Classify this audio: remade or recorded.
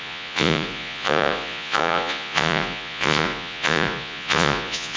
remade